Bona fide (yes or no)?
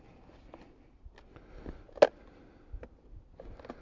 yes